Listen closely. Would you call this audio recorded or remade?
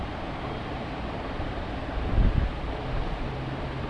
recorded